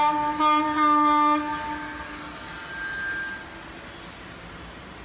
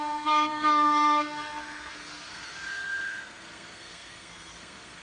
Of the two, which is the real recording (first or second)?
first